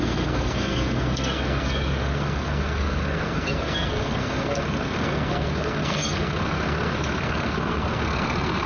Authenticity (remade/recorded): remade